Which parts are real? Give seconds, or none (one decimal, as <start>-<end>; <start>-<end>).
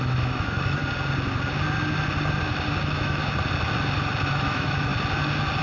0.8-2.8; 3.2-4.3; 4.9-5.6